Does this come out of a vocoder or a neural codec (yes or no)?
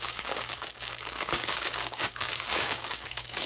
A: yes